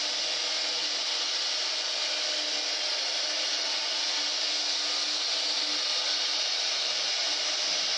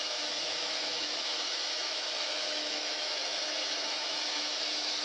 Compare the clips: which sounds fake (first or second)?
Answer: second